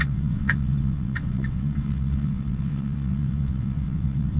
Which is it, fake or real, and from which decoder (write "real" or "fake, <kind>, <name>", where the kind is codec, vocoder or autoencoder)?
fake, vocoder, WaveNeXt